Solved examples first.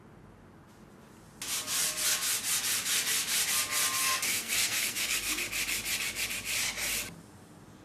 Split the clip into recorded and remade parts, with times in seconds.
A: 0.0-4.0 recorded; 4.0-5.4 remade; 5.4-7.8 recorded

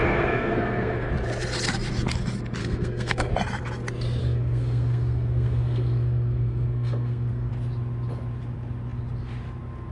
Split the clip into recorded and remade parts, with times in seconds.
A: 0.0-1.1 remade; 1.1-2.6 recorded; 2.6-3.3 remade; 3.3-4.2 recorded; 4.2-7.5 remade; 7.5-9.9 recorded

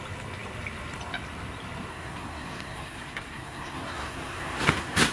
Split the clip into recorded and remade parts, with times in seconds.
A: 0.0-1.9 recorded; 1.9-5.1 remade

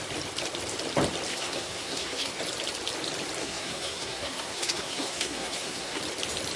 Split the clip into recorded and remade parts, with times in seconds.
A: 0.0-1.3 recorded; 1.3-2.3 remade; 2.3-3.4 recorded; 3.4-6.0 remade; 6.0-6.6 recorded

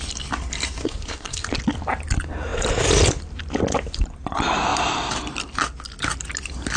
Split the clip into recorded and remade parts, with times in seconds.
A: 0.0-0.8 recorded; 0.8-1.5 remade; 1.5-6.8 recorded

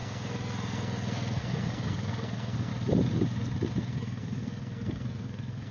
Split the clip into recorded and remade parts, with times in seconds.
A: 0.0-2.7 remade; 2.7-3.8 recorded; 3.8-5.7 remade